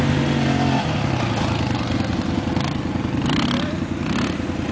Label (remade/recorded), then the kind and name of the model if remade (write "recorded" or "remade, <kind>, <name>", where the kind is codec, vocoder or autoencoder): recorded